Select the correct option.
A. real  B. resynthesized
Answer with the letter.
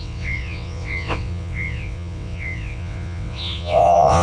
B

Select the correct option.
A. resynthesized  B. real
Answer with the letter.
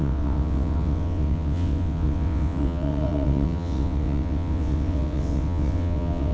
A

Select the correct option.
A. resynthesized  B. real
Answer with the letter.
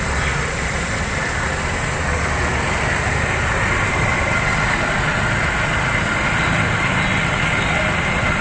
B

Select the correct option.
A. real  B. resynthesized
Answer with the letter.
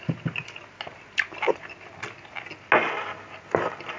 A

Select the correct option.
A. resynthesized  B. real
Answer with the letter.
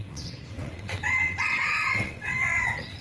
A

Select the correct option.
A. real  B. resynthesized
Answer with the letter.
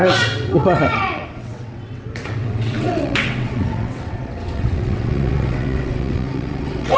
B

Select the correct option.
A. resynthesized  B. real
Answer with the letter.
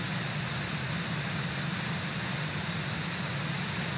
B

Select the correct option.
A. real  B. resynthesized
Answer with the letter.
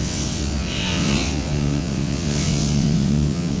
B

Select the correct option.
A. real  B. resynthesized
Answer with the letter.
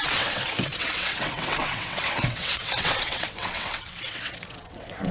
B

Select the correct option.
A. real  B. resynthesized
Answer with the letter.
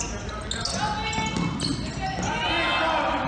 A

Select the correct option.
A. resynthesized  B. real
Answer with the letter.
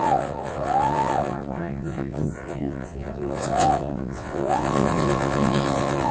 A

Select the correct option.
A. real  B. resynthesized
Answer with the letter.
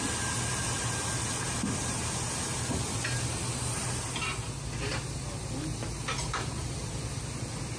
A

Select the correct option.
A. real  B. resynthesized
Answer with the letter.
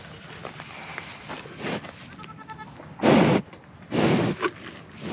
A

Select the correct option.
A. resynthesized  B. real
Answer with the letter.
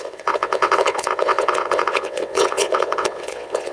A